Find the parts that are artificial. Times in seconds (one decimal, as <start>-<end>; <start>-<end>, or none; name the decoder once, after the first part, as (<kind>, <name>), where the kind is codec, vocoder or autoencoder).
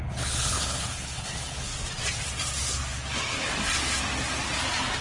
0.0-1.7 (codec, HILCodec)